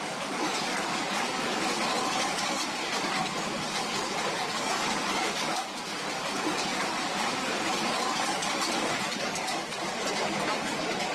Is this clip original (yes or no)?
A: no